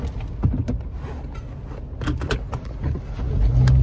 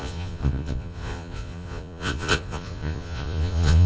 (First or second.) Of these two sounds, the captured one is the first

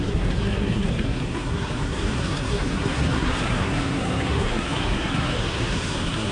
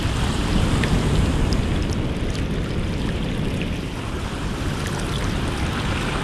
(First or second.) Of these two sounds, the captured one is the second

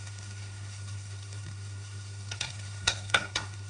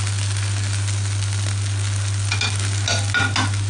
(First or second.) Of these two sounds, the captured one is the second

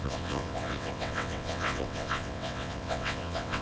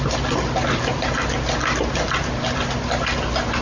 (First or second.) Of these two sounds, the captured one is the second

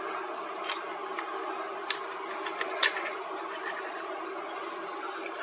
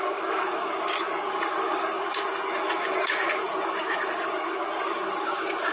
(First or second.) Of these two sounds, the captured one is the first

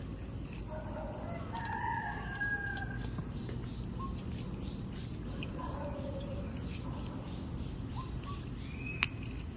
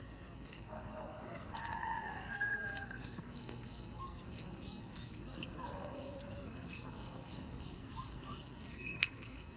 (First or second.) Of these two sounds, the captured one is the first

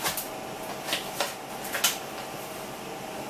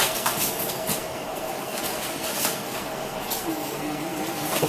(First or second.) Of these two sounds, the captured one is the first